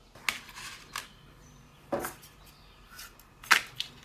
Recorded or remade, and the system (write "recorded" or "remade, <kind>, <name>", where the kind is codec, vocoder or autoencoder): recorded